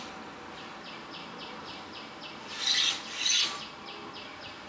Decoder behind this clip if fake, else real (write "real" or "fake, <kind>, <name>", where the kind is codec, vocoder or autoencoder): real